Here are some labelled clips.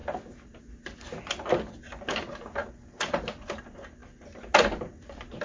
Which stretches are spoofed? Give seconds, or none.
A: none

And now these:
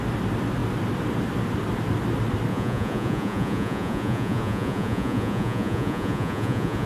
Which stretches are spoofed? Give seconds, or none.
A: 2.5-6.9 (vocoder, Vocos)